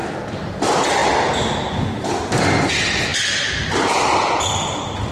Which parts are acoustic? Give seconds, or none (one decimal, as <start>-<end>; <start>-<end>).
0.0-5.1